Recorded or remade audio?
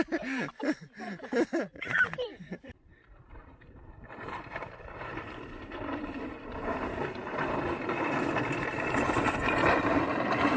remade